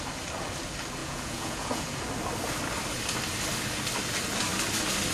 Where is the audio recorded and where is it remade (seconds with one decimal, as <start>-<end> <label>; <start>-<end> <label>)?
0.0-1.0 recorded; 1.0-2.1 remade; 2.1-5.1 recorded